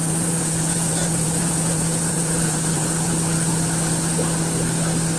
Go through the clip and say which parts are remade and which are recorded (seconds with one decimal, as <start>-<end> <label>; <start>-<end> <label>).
0.0-3.1 remade; 3.1-5.2 recorded

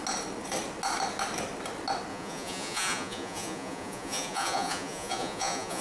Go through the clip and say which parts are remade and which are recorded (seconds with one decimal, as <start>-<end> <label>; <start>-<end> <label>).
0.0-2.1 recorded; 2.1-5.8 remade

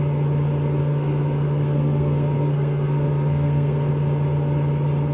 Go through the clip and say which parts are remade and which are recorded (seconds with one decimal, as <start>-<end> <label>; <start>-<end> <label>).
0.0-0.8 recorded; 0.8-3.9 remade; 3.9-5.1 recorded

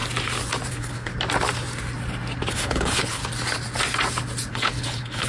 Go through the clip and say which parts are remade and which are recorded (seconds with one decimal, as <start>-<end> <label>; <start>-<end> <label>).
0.0-0.7 recorded; 0.7-1.1 remade; 1.1-2.5 recorded; 2.5-3.2 remade; 3.2-4.5 recorded; 4.5-5.3 remade

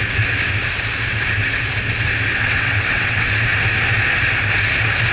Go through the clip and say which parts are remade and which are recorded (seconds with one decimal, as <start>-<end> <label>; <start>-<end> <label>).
0.0-2.3 recorded; 2.3-3.3 remade; 3.3-5.1 recorded

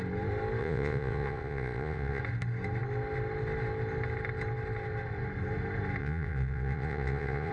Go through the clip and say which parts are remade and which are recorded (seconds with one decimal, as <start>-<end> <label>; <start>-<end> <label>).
0.0-0.6 recorded; 0.6-2.2 remade; 2.2-6.0 recorded; 6.0-7.5 remade